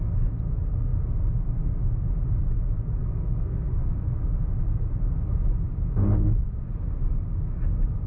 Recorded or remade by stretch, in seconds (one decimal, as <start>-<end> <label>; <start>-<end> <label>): 0.0-3.0 recorded; 3.0-3.7 remade; 3.7-8.1 recorded